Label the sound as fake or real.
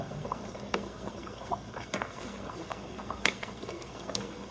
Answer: fake